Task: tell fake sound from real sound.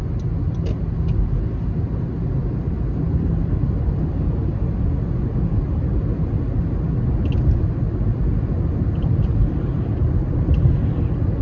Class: real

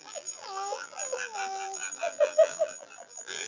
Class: fake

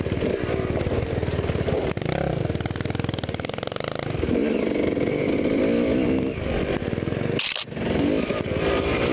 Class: real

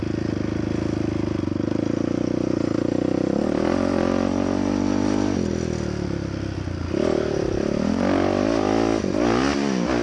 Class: real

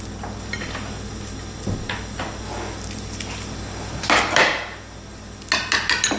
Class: real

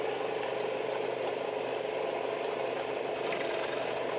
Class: real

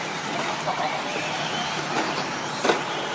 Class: fake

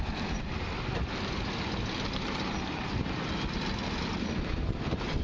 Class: real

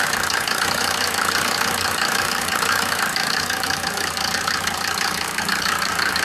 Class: fake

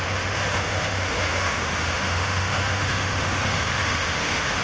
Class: fake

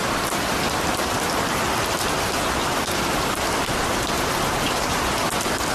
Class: real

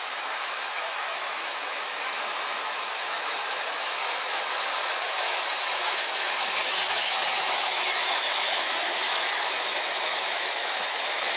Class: fake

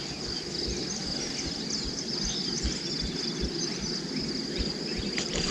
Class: fake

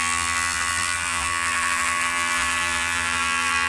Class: fake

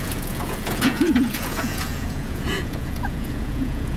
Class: fake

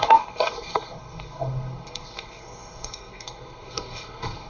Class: fake